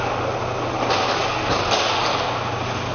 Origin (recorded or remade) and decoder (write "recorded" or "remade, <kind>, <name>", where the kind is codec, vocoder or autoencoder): recorded